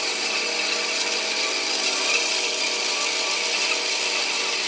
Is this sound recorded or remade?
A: recorded